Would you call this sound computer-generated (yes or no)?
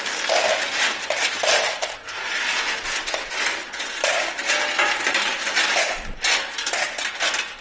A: no